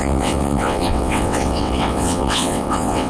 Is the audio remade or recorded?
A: remade